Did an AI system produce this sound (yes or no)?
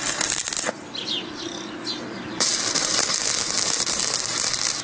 no